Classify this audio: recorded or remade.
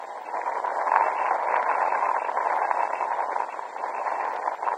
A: recorded